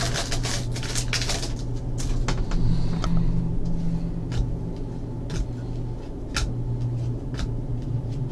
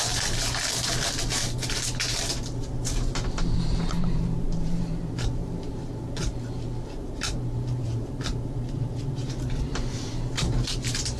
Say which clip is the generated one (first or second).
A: second